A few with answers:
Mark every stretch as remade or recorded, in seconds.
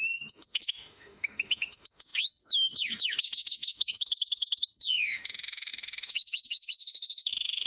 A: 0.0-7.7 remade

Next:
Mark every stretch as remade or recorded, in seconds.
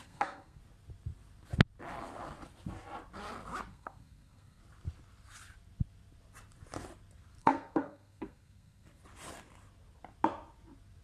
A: 0.0-0.6 remade; 0.6-3.7 recorded; 3.7-4.6 remade; 4.6-7.4 recorded; 7.4-9.0 remade; 9.0-11.0 recorded